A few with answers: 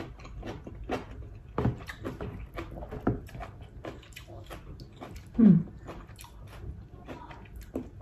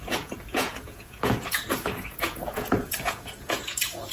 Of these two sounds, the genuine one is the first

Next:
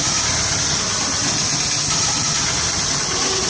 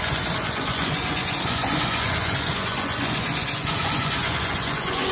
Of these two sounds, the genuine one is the first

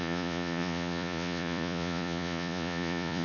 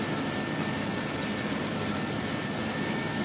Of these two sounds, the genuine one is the second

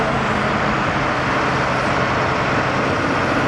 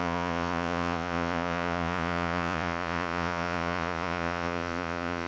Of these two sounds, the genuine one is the first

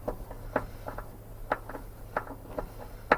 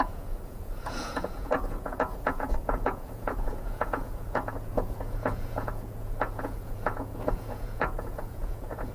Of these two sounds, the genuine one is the first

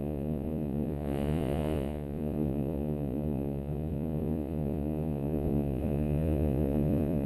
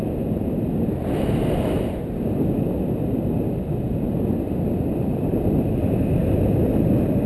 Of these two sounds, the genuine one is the second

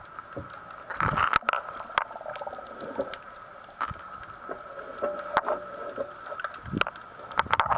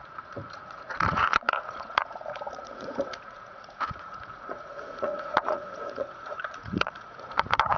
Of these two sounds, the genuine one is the first